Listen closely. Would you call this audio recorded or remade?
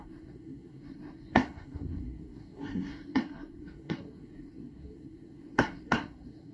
remade